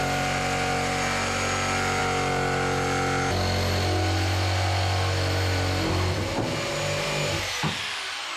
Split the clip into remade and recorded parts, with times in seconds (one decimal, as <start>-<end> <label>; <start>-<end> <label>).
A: 0.0-8.4 recorded